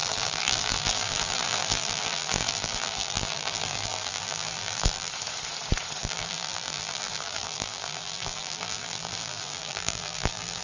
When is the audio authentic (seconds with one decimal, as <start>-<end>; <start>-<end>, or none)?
5.1-6.0

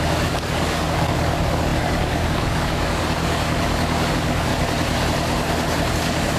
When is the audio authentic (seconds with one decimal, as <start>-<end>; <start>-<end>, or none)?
4.5-5.9

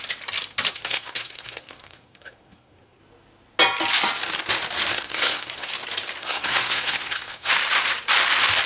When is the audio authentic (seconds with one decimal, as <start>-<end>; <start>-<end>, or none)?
0.0-0.7; 3.0-4.9; 5.7-6.2; 7.5-8.7

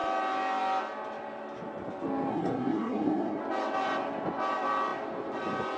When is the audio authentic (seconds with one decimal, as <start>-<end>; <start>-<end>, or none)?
0.0-2.3; 3.4-5.8

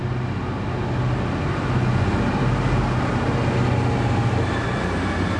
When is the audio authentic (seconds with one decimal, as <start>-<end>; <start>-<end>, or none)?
0.0-5.4